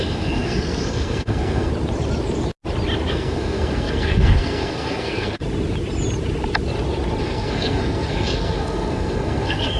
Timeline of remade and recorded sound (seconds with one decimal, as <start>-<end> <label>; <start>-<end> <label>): 0.0-1.7 remade; 1.7-3.1 recorded; 3.1-5.4 remade; 5.4-7.2 recorded; 7.2-9.8 remade